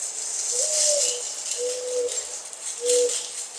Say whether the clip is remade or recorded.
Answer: recorded